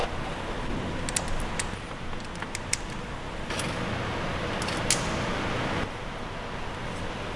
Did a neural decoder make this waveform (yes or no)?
no